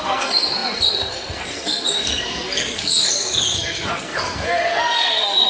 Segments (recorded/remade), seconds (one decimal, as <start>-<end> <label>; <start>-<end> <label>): 0.0-5.5 remade